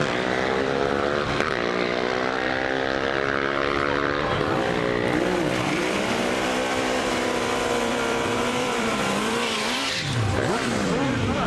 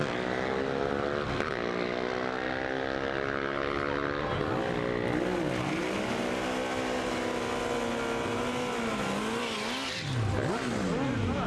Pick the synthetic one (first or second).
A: first